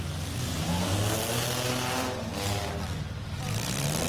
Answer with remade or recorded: recorded